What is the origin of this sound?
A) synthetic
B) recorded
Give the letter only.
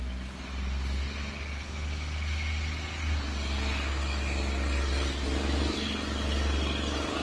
B